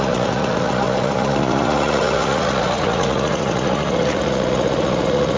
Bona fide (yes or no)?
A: no